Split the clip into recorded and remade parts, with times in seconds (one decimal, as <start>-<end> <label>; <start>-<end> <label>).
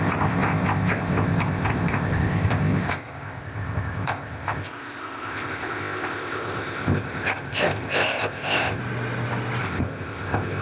0.0-8.8 remade; 8.8-9.6 recorded; 9.6-10.6 remade